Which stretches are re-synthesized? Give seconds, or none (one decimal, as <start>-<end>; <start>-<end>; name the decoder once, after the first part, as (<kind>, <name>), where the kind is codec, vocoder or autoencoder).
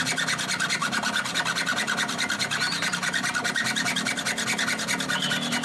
0.8-4.2 (vocoder, BigVGAN v2)